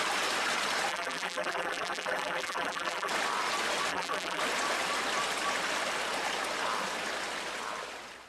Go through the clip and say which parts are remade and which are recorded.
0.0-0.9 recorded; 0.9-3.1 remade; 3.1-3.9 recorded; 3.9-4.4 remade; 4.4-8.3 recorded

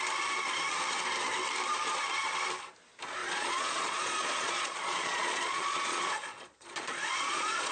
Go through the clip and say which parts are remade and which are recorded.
0.0-3.2 recorded; 3.2-7.7 remade